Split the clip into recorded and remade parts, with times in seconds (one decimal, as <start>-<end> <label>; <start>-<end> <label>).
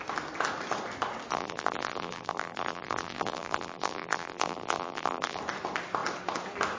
0.0-1.3 recorded; 1.3-5.4 remade; 5.4-6.8 recorded